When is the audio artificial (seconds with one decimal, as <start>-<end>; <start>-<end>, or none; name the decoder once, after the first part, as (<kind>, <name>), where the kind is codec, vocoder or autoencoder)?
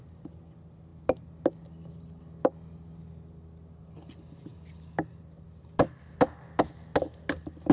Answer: none